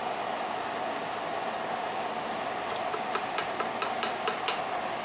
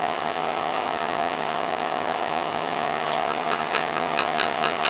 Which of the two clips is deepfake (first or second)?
second